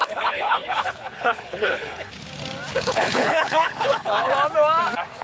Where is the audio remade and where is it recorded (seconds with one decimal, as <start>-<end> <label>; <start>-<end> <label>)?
0.0-2.1 remade; 2.1-2.7 recorded; 2.7-4.3 remade; 4.3-5.2 recorded